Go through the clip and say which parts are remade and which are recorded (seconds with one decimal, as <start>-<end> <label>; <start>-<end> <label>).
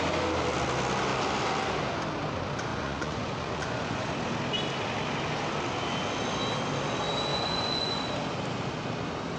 0.0-2.7 recorded; 2.7-4.0 remade; 4.0-7.3 recorded; 7.3-8.0 remade; 8.0-9.4 recorded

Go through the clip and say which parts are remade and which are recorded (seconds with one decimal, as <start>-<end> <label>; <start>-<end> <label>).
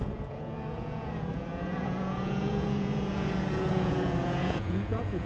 0.0-5.3 remade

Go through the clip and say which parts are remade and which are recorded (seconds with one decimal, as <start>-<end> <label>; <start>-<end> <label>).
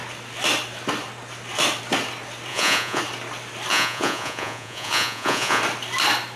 0.0-2.5 recorded; 2.5-3.0 remade; 3.0-3.7 recorded; 3.7-5.6 remade; 5.6-6.4 recorded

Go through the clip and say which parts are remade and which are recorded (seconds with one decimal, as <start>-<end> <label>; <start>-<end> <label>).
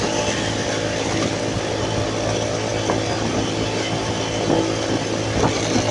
0.0-5.9 recorded